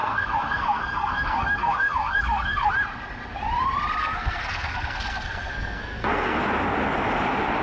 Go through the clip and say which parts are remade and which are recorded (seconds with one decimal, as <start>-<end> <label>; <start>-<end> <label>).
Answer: 0.0-2.7 remade; 2.7-4.0 recorded; 4.0-6.4 remade; 6.4-7.6 recorded